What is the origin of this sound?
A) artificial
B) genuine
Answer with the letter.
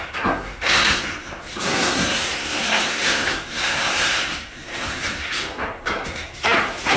A